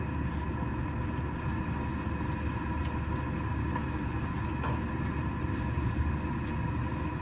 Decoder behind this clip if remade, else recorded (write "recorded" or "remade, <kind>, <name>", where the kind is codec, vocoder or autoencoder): recorded